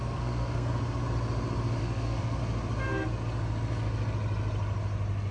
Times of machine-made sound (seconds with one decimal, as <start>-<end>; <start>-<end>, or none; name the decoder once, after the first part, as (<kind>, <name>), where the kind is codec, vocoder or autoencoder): 0.0-0.8 (codec, SNAC); 1.8-2.4